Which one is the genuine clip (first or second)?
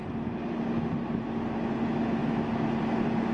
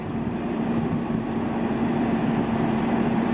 first